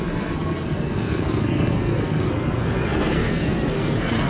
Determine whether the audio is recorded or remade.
remade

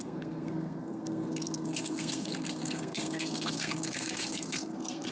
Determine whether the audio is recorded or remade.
remade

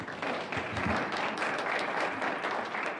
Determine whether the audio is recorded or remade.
recorded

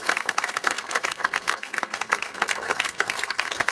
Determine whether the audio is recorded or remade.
remade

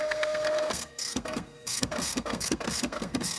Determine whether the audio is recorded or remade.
remade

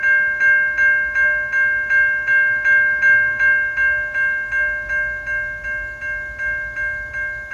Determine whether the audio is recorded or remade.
recorded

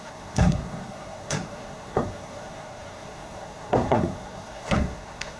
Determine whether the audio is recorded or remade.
remade